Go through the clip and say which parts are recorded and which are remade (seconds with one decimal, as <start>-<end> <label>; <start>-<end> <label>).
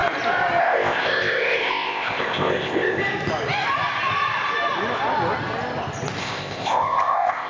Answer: 0.0-0.6 recorded; 0.6-3.0 remade; 3.0-6.2 recorded; 6.2-7.5 remade